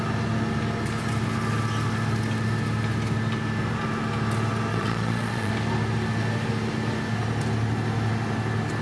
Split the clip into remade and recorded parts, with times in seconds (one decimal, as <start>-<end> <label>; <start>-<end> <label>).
0.0-4.7 recorded; 4.7-5.5 remade; 5.5-8.8 recorded

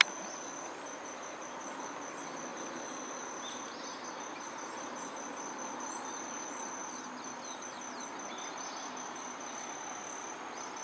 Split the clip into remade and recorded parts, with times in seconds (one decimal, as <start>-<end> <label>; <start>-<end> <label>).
0.0-10.8 recorded

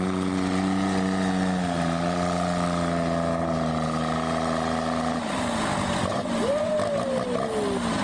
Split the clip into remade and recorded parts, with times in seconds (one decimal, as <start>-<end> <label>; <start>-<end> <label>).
0.0-6.1 recorded; 6.1-6.7 remade; 6.7-8.0 recorded

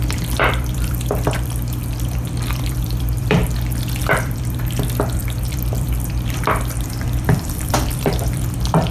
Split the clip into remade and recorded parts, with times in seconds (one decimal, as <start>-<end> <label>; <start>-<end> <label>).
0.0-3.4 remade; 3.4-4.0 recorded; 4.0-8.9 remade